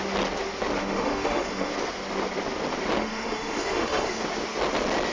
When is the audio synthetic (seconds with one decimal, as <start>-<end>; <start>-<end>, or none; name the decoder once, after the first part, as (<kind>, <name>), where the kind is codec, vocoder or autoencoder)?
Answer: 0.8-1.7 (autoencoder, DAC-VAE); 3.0-4.2